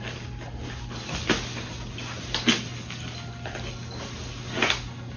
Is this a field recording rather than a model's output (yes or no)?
yes